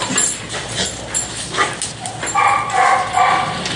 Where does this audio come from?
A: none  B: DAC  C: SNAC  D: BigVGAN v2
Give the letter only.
A